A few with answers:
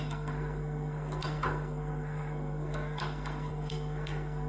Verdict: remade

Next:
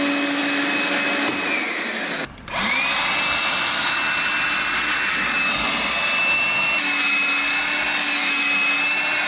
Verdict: recorded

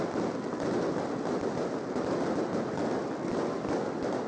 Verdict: recorded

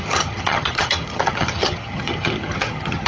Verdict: remade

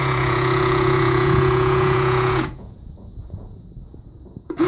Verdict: remade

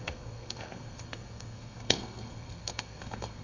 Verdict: remade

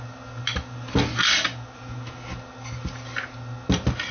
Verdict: recorded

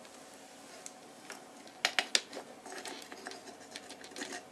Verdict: recorded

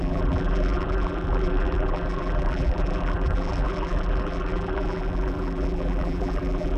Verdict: remade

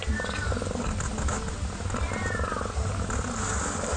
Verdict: recorded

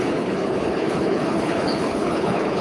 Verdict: remade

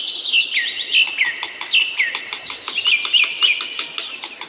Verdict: recorded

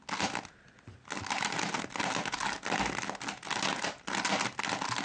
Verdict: recorded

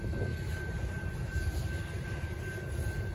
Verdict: remade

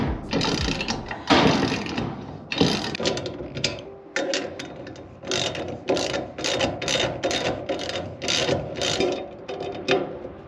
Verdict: recorded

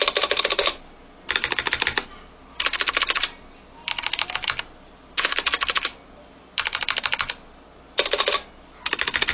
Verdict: recorded